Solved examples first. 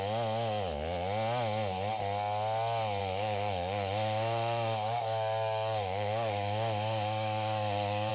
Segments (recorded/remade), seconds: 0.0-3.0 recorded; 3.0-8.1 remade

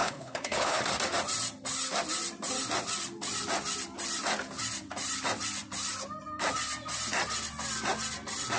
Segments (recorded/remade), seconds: 0.0-0.8 remade; 0.8-8.6 recorded

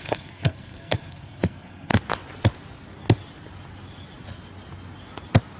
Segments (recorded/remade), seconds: 0.0-1.9 remade; 1.9-5.6 recorded

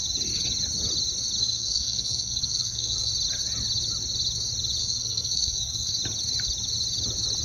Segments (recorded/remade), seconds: 0.0-1.4 recorded; 1.4-3.1 remade; 3.1-4.8 recorded; 4.8-5.9 remade; 5.9-7.4 recorded

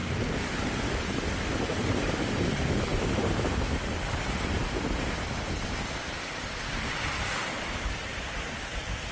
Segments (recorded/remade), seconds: 0.0-9.1 recorded